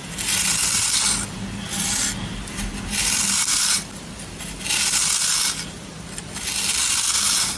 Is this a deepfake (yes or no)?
no